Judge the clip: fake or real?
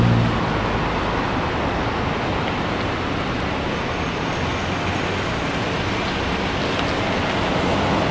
real